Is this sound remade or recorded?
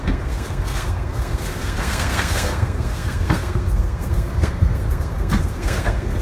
remade